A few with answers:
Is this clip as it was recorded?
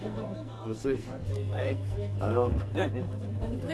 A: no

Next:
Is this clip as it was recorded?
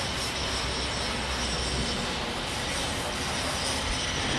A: yes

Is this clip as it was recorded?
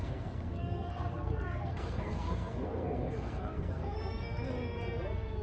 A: no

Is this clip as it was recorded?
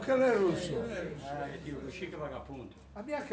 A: yes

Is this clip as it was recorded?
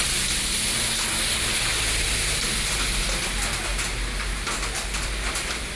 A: yes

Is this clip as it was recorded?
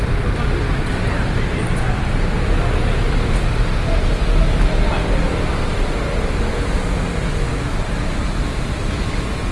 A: yes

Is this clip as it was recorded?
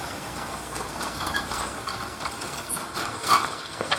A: no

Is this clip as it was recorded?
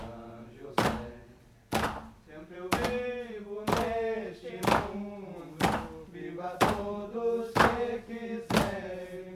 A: yes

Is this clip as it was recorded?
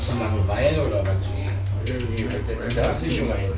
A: yes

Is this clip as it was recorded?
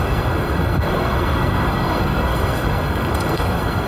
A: no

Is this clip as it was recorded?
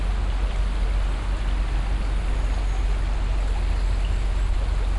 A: yes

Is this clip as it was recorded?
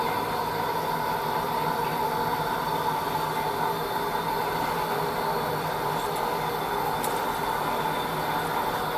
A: yes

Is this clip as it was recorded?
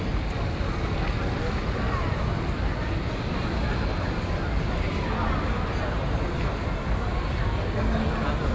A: yes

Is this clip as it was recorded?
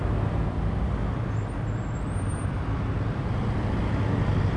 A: yes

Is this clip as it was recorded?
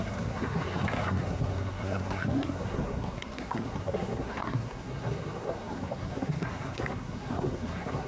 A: no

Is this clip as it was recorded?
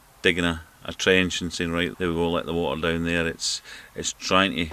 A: yes